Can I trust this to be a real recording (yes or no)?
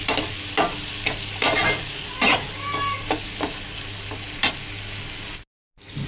yes